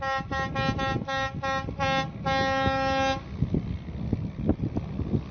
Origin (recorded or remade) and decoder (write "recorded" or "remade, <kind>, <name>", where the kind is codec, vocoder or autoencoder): recorded